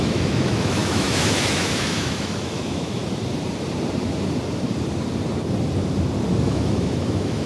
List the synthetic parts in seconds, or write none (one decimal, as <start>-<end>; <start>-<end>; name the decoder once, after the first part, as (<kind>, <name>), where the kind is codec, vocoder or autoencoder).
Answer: 0.0-3.0 (autoencoder, DAC-VAE); 6.4-7.5